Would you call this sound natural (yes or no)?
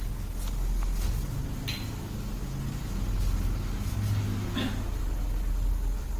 yes